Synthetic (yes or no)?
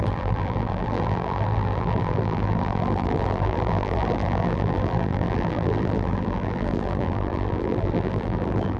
yes